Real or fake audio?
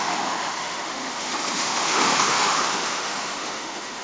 fake